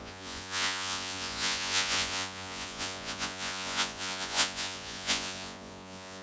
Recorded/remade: remade